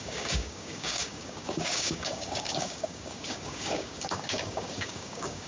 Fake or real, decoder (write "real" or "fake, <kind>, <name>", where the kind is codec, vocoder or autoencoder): fake, codec, DAC